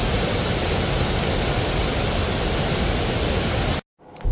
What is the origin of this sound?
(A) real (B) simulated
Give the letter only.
A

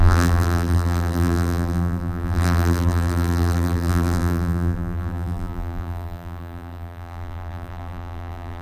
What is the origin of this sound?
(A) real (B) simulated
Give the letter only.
B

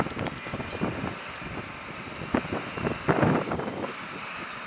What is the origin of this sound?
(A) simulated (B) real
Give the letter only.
B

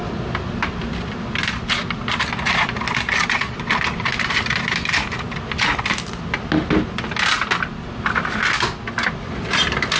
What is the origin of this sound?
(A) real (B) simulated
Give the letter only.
A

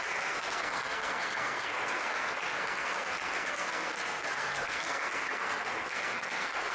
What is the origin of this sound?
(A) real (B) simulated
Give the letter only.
B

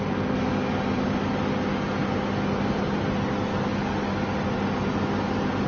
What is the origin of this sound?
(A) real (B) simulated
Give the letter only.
A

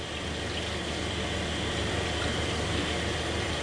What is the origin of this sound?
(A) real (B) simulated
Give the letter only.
A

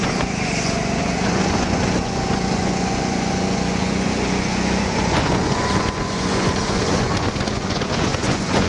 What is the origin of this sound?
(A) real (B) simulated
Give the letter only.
B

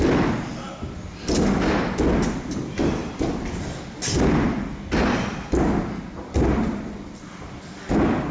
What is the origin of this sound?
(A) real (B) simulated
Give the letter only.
A